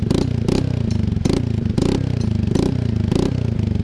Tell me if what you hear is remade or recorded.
recorded